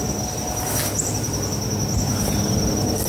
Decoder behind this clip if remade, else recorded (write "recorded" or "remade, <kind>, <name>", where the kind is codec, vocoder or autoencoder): recorded